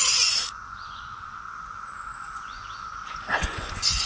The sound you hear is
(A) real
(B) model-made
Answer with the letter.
B